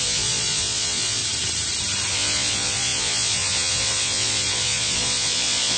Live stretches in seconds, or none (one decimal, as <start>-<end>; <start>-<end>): 1.2-2.1